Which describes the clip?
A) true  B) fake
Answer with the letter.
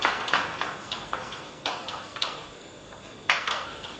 B